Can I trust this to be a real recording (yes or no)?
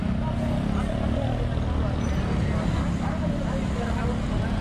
yes